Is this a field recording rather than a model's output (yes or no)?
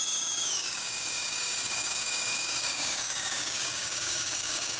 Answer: no